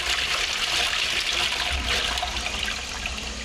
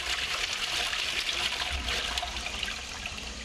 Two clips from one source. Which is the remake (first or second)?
second